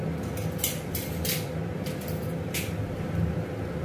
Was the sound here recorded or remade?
recorded